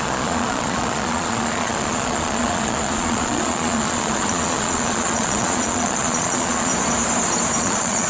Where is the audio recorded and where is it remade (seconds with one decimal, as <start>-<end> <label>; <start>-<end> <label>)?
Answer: 0.0-6.7 remade; 6.7-7.6 recorded; 7.6-8.1 remade

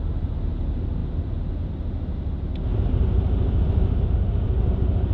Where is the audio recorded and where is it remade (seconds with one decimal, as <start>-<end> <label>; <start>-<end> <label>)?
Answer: 0.0-5.1 recorded

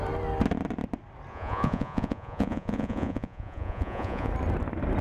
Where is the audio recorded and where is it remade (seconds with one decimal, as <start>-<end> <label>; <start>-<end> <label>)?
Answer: 0.0-1.3 recorded; 1.3-4.3 remade; 4.3-5.0 recorded